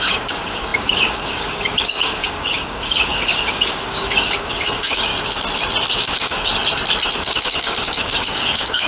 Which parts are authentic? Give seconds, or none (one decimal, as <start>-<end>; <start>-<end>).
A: 5.1-5.9; 6.5-7.2